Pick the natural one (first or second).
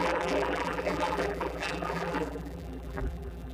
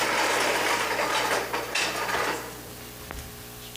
second